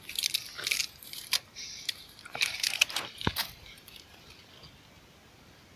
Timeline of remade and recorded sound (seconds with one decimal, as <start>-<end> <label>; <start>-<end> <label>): 0.0-0.8 recorded; 0.8-4.3 remade; 4.3-5.8 recorded